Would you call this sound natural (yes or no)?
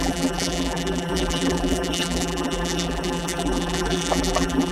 no